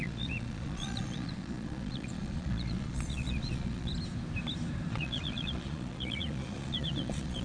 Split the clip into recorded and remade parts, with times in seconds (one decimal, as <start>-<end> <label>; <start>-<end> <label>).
0.0-3.9 remade; 3.9-4.9 recorded; 4.9-7.4 remade

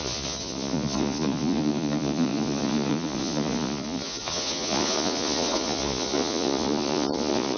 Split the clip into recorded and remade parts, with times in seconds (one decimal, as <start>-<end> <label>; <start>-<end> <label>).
0.0-7.6 remade

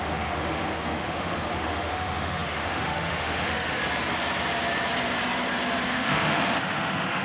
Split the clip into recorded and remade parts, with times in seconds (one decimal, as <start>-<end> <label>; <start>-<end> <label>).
0.0-3.8 remade; 3.8-5.9 recorded; 5.9-7.2 remade

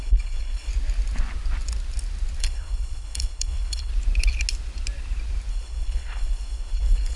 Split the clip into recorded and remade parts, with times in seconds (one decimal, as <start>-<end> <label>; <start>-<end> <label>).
0.0-0.7 remade; 0.7-2.4 recorded; 2.4-3.9 remade; 3.9-5.5 recorded; 5.5-7.2 remade

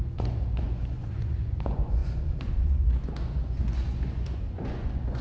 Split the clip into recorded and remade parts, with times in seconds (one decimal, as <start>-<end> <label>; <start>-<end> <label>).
0.0-5.2 remade

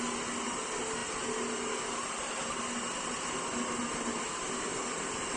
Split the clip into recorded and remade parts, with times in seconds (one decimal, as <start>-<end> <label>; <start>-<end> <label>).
0.0-5.4 recorded